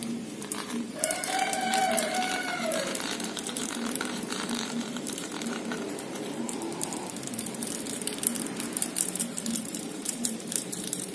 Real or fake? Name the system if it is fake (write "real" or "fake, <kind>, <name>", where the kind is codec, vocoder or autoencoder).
fake, vocoder, BigVGAN v2